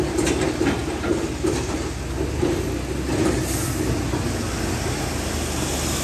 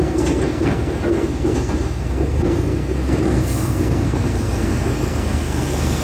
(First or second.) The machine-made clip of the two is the second